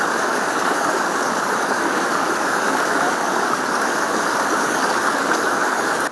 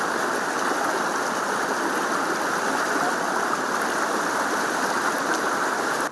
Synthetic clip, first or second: first